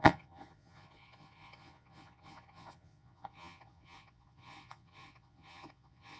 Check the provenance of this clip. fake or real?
fake